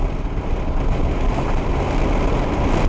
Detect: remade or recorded recorded